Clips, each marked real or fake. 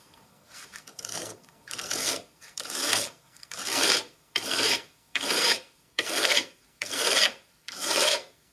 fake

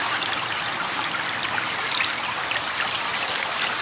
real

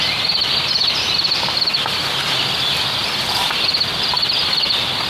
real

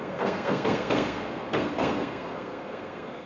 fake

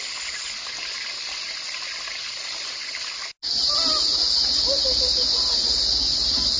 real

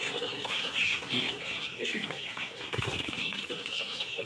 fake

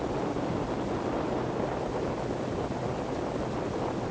real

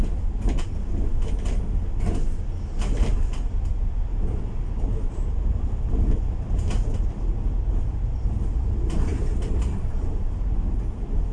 real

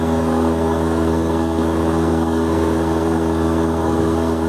fake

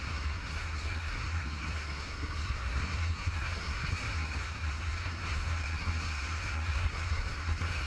fake